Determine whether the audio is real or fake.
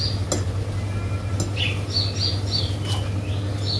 real